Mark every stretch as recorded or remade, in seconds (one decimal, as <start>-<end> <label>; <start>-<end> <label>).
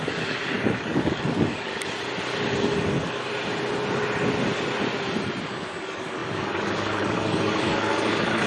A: 0.0-1.7 remade; 1.7-5.4 recorded; 5.4-8.5 remade